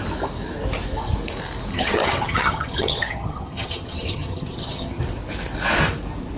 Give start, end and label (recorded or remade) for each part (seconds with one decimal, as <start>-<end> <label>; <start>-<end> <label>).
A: 0.0-1.7 recorded; 1.7-5.0 remade; 5.0-6.4 recorded